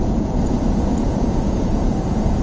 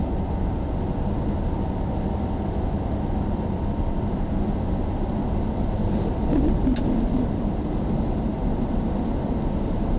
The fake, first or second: first